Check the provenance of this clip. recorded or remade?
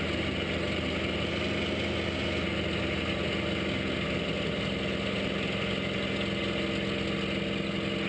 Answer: recorded